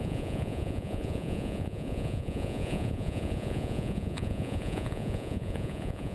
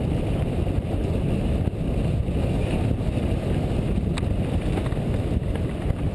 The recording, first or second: second